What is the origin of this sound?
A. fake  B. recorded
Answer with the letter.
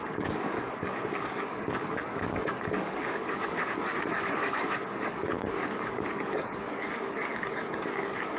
A